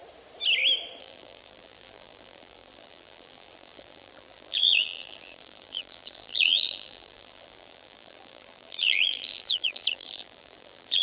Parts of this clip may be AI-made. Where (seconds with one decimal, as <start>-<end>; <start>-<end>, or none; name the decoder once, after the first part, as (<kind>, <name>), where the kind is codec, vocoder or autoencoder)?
1.0-11.0 (vocoder, BigVGAN v2)